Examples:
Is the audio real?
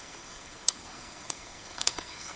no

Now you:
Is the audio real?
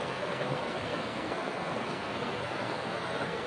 no